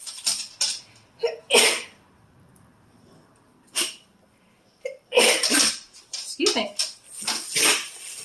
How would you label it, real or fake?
real